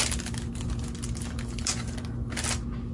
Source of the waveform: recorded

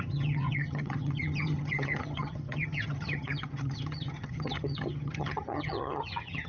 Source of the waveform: remade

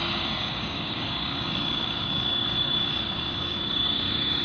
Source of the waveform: remade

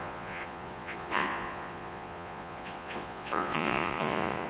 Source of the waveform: remade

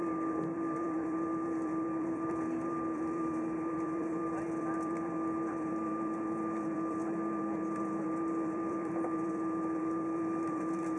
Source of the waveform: remade